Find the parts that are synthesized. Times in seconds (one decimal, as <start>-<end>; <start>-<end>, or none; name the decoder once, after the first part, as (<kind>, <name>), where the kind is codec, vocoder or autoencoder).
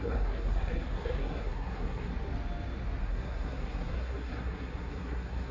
0.0-2.1 (codec, SNAC); 3.0-5.5